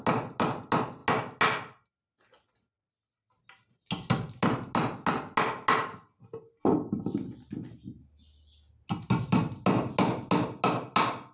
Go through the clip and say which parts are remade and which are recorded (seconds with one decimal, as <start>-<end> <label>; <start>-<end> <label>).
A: 0.0-11.3 recorded